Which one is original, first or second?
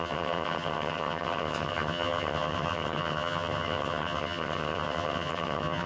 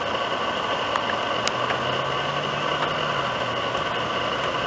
second